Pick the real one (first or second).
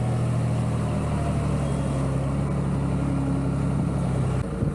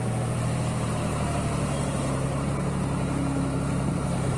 first